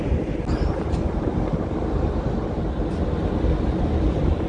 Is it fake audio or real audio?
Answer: real